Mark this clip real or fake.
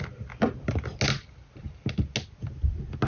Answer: real